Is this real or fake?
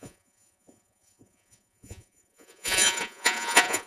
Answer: fake